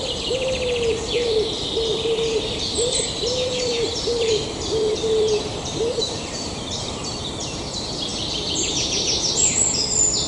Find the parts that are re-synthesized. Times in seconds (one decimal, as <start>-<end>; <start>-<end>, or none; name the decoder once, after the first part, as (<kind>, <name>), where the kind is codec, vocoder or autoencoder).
0.0-8.1 (vocoder, BigVGAN v2); 9.3-10.3